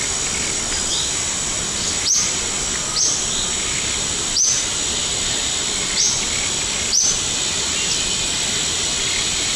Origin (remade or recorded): recorded